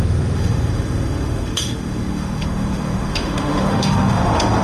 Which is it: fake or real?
fake